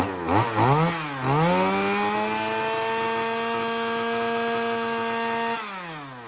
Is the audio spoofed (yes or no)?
no